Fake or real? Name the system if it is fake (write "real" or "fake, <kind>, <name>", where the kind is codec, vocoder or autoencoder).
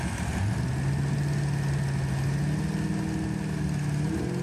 real